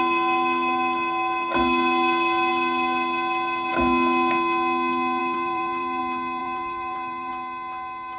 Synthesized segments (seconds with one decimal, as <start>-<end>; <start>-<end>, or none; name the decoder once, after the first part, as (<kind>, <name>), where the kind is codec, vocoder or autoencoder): 5.2-6.0 (vocoder, BigVGAN v2); 6.4-7.3